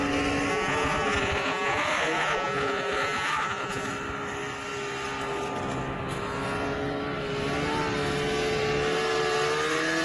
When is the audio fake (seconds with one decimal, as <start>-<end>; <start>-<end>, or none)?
0.5-3.9